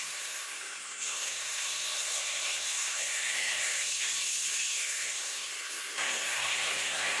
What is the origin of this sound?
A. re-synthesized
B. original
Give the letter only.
A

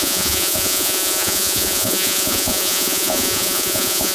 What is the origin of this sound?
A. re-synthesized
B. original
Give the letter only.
A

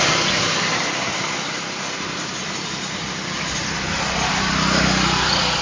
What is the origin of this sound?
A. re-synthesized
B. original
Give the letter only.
B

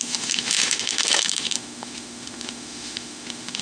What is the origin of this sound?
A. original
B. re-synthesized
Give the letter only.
B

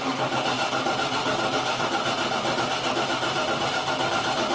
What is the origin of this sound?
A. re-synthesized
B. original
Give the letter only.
B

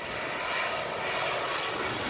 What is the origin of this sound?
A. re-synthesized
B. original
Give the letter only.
B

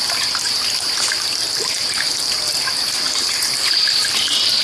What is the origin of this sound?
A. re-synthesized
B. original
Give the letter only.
B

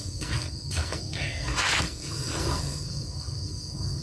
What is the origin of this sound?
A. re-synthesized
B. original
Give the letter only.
A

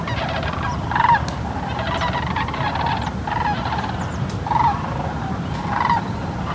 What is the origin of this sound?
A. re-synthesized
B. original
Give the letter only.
B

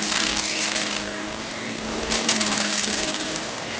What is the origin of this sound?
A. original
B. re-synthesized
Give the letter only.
B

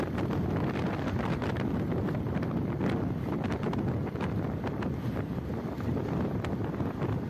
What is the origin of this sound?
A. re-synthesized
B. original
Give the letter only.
B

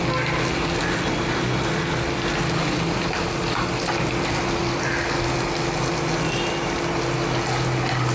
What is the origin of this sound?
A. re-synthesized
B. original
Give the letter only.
B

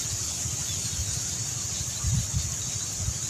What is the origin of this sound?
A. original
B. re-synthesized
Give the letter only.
A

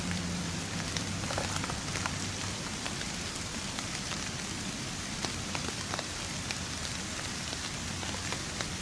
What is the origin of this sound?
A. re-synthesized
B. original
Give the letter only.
A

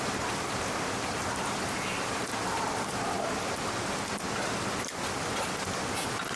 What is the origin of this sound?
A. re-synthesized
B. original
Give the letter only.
B